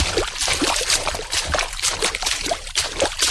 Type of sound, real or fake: fake